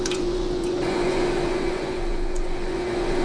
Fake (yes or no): yes